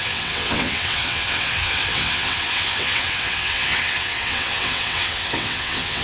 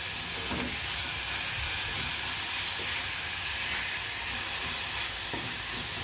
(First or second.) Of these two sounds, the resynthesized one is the first